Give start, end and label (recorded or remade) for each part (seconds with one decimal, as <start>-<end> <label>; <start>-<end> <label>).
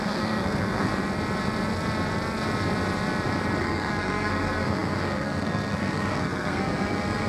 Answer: 0.0-0.9 remade; 0.9-3.6 recorded; 3.6-7.3 remade